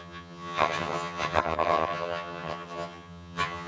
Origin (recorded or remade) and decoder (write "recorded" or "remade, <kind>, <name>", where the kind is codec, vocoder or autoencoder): remade, vocoder, HiFi-GAN